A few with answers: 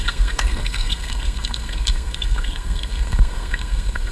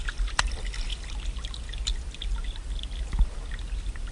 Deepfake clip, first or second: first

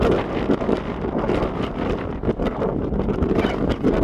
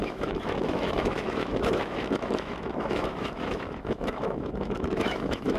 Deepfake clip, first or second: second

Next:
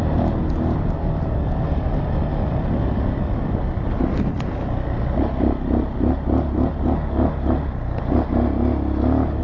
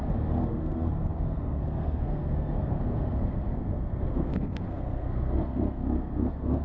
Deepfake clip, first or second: second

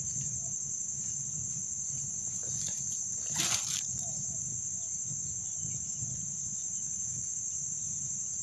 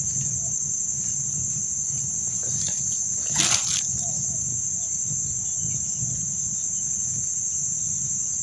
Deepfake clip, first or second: first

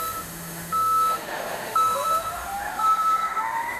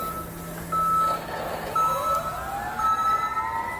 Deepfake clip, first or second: first